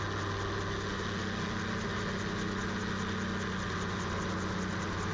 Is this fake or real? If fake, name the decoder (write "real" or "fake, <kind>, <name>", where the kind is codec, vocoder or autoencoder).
real